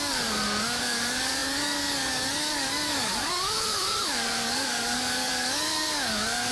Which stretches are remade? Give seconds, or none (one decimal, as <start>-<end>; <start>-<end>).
0.0-6.5